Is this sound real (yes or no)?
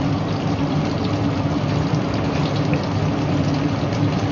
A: yes